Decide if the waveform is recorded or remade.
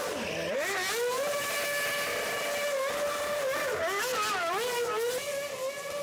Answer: recorded